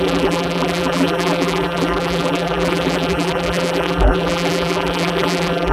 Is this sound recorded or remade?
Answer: remade